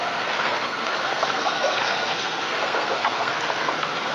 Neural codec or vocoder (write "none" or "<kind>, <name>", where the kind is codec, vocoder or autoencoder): codec, SNAC